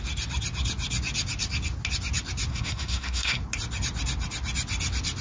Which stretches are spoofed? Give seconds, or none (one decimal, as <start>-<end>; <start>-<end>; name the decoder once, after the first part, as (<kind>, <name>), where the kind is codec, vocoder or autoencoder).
2.5-3.4 (codec, SNAC)